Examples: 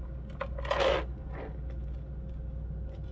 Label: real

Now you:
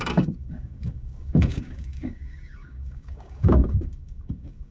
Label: fake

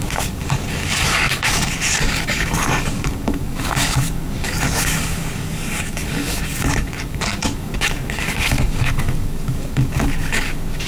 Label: fake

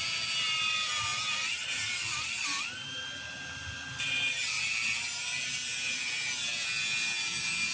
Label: real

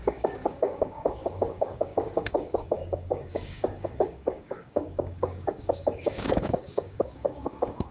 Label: fake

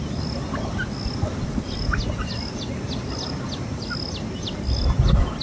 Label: real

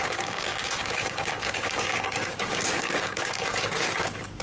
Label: fake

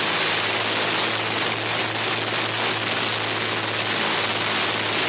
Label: real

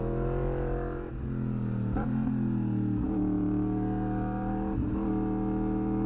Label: real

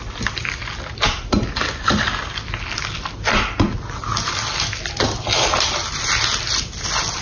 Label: real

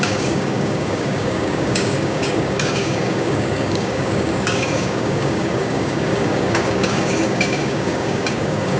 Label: fake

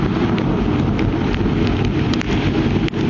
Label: real